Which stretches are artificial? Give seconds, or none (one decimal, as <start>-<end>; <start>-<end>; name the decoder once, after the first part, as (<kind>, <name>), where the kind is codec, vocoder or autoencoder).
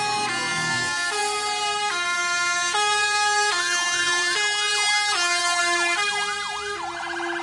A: 1.2-5.6 (vocoder, BigVGAN v2)